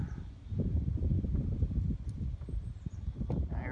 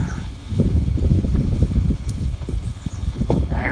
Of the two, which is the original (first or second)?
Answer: first